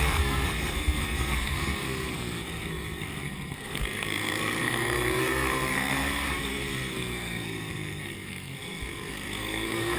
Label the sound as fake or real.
fake